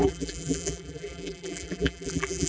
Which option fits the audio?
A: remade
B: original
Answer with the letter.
A